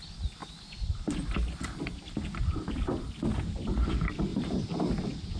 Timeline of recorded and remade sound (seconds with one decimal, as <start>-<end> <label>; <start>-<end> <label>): 0.0-0.4 recorded; 0.4-2.4 remade; 2.4-4.3 recorded; 4.3-4.9 remade; 4.9-5.4 recorded